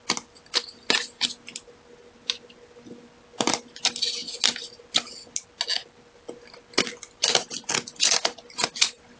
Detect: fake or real real